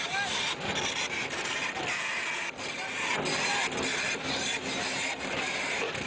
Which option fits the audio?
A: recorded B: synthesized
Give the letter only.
A